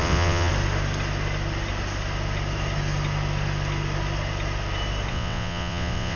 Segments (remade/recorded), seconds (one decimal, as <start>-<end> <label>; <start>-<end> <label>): 0.0-0.5 remade; 0.5-5.1 recorded; 5.1-6.2 remade